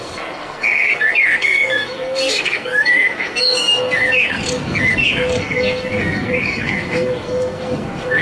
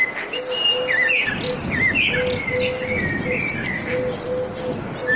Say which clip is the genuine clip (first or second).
second